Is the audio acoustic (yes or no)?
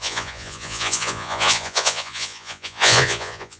no